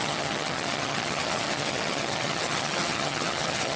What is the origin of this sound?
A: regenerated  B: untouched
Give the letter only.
A